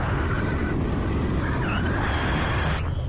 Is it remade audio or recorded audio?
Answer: recorded